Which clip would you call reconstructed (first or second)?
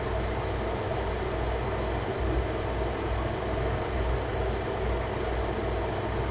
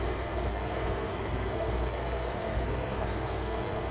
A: second